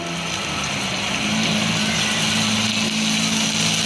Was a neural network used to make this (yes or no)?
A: no